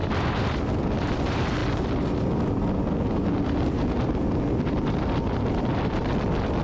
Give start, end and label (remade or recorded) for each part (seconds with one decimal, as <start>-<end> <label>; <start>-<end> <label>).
0.0-6.6 recorded